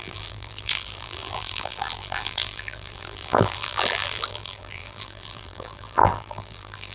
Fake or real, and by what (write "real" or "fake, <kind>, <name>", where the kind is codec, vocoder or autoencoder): fake, vocoder, BigVGAN v2